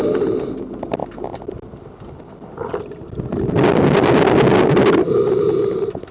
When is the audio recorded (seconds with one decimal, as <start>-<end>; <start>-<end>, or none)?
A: 0.0-6.1